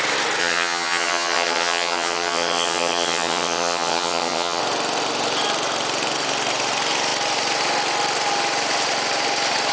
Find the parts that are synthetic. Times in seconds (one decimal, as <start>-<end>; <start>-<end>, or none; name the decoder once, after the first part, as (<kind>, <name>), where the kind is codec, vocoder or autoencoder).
0.4-4.6 (vocoder, HiFi-GAN)

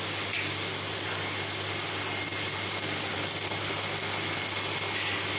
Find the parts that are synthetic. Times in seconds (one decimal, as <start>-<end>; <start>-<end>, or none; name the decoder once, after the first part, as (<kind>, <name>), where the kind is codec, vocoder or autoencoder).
none